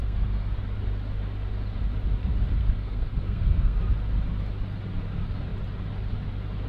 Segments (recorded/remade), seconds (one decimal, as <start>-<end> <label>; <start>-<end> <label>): 0.0-0.6 remade; 0.6-2.6 recorded; 2.6-3.8 remade; 3.8-6.7 recorded